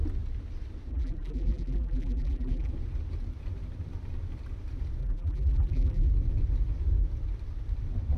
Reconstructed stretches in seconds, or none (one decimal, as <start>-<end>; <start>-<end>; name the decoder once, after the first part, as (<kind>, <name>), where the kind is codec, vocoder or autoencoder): 0.9-2.7 (vocoder, BigVGAN v2); 5.0-6.1